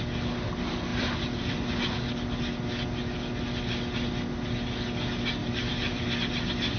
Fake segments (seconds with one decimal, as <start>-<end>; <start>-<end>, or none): 0.9-1.5; 5.4-6.3